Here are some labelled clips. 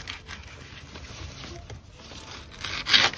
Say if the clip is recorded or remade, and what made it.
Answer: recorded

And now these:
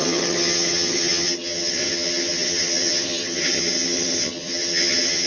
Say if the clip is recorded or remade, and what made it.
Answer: remade, vocoder, HiFi-GAN